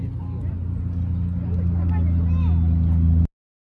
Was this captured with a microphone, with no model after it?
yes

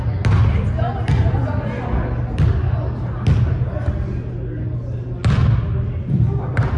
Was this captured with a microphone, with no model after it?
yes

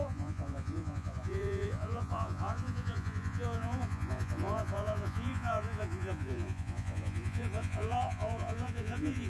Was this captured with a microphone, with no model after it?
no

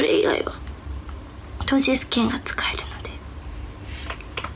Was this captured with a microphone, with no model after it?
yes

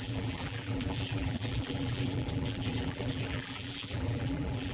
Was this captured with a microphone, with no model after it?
no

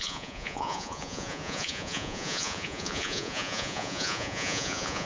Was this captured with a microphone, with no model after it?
no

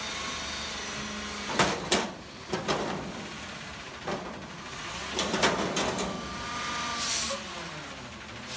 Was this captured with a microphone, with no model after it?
yes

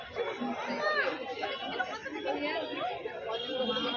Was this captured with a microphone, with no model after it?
yes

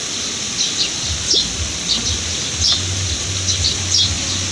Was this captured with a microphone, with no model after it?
yes